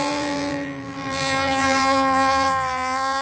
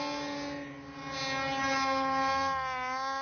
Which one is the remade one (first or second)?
first